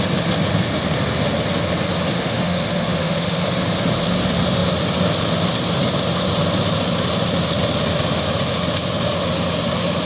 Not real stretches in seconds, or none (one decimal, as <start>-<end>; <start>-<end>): 2.1-3.4

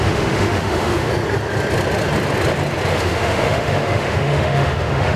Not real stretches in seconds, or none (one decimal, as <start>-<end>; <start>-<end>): 0.0-1.1; 2.9-5.2

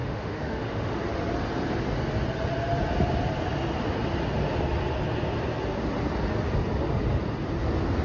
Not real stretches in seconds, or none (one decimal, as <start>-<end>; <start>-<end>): 0.0-1.0

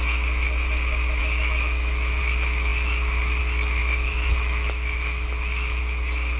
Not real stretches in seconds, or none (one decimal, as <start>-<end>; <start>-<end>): 1.2-2.2; 3.8-5.8

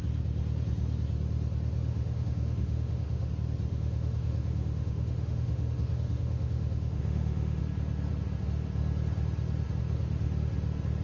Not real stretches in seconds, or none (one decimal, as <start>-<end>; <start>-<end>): 1.9-3.3; 3.7-7.6